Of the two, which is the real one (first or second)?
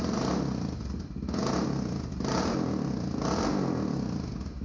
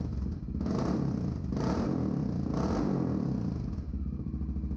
first